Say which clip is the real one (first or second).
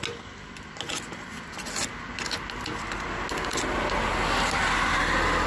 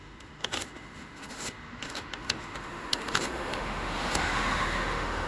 first